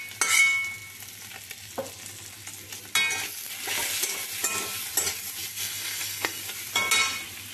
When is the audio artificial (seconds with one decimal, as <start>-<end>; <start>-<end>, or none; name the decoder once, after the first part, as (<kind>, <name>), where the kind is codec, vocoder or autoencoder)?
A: 5.5-6.4 (codec, SNAC)